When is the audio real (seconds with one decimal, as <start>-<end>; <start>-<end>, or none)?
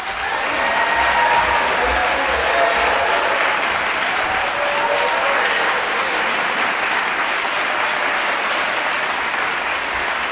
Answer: 0.0-10.3